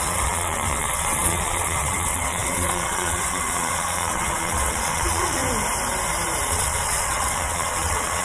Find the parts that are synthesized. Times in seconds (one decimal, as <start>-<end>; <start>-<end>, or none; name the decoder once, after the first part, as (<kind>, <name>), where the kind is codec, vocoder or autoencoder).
0.0-5.4 (vocoder, WaveNeXt); 6.5-8.2